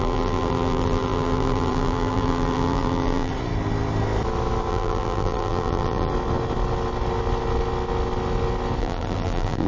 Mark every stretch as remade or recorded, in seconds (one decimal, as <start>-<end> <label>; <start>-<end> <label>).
0.0-3.3 remade; 3.3-4.7 recorded; 4.7-6.1 remade; 6.1-8.8 recorded; 8.8-9.7 remade